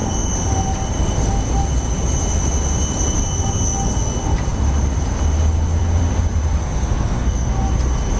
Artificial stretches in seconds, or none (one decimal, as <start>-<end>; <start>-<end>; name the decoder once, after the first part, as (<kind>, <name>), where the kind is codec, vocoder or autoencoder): 6.6-7.5 (codec, SNAC)